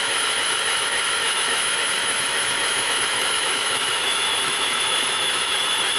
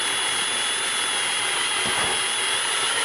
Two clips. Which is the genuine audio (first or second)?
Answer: second